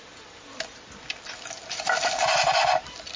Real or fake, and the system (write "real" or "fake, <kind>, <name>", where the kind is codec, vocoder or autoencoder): real